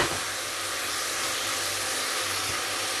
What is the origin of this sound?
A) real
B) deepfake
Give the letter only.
A